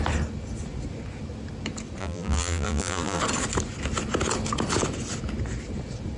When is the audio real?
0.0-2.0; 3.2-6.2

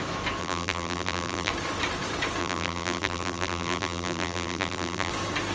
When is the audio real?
0.0-0.4; 1.5-2.4; 5.1-5.5

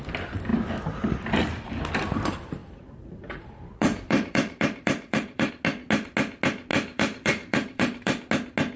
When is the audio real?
0.0-2.6; 5.5-6.7; 8.3-8.8

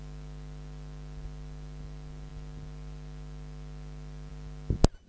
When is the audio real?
0.0-5.1

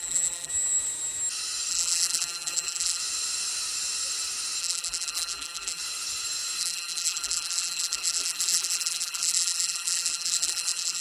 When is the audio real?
0.5-1.7; 3.0-4.6; 5.8-6.6

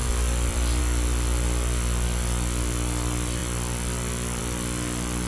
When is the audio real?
0.8-5.3